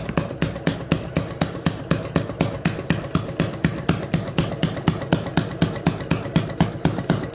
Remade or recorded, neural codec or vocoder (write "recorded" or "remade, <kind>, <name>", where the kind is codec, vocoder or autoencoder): recorded